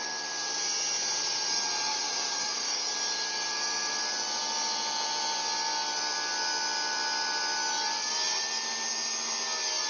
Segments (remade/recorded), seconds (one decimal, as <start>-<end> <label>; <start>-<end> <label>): 0.0-1.9 recorded; 1.9-2.9 remade; 2.9-9.9 recorded

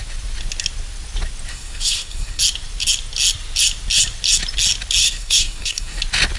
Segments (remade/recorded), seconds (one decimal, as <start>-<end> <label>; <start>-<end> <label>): 0.0-1.5 recorded; 1.5-2.4 remade; 2.4-5.0 recorded; 5.0-6.0 remade; 6.0-6.4 recorded

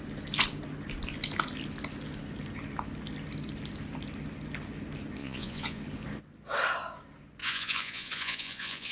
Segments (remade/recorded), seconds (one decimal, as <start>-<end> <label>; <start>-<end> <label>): 0.0-5.2 recorded; 5.2-5.8 remade; 5.8-7.4 recorded; 7.4-8.9 remade

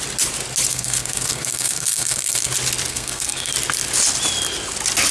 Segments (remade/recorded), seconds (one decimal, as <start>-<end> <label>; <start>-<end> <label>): 0.0-0.7 recorded; 0.7-2.5 remade; 2.5-2.9 recorded; 2.9-3.5 remade; 3.5-5.1 recorded